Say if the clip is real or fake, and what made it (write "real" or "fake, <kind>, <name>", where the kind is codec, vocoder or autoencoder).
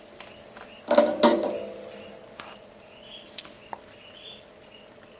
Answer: real